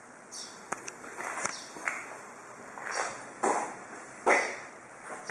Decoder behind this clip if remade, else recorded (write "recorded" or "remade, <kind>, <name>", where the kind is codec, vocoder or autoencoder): recorded